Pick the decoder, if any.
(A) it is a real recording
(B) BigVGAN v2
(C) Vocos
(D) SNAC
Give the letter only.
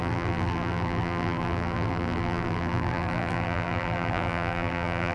B